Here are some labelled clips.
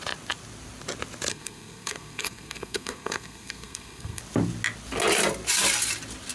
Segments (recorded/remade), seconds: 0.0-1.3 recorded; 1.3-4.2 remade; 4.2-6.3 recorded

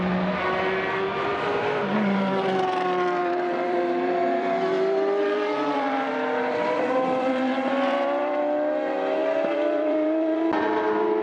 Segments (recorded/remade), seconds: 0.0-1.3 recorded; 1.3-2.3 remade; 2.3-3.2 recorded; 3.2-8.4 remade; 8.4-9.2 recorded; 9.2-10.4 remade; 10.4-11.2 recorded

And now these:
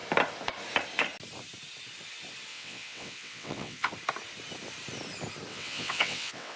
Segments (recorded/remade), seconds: 0.0-2.5 recorded; 2.5-3.9 remade; 3.9-5.5 recorded; 5.5-6.6 remade